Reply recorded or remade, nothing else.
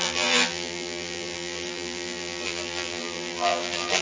remade